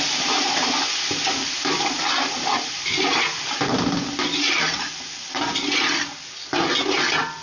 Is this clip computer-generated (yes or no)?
no